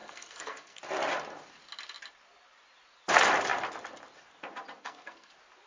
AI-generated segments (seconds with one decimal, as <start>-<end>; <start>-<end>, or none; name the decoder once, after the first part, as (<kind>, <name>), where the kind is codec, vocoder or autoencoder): 0.0-0.8 (codec, SNAC); 4.8-5.3